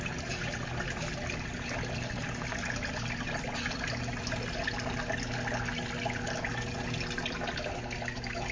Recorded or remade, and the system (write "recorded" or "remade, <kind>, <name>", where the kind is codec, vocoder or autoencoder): recorded